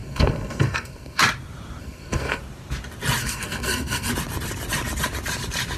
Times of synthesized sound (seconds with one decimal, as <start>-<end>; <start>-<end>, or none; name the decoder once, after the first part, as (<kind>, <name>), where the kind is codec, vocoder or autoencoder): 0.0-1.2 (codec, SNAC); 1.8-2.4; 3.2-4.1